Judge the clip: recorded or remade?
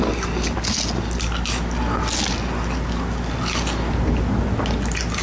recorded